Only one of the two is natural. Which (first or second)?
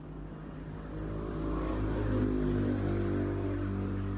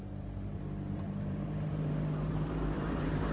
first